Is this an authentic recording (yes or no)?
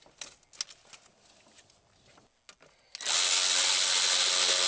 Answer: yes